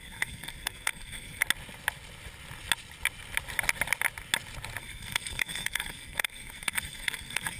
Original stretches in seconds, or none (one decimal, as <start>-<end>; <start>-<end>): 1.4-4.8